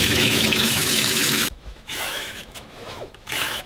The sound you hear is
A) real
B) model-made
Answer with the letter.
B